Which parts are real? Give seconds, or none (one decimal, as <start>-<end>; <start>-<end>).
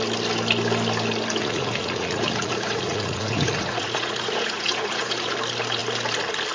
0.0-1.4; 5.3-6.5